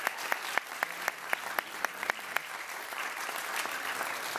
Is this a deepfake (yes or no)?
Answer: no